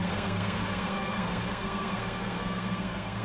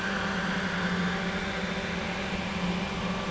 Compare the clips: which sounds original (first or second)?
second